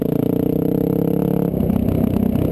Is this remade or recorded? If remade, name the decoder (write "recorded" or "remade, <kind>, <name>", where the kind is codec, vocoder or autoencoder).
recorded